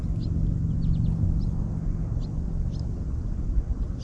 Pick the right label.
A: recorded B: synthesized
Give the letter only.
A